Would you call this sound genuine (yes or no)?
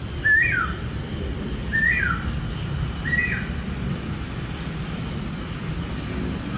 yes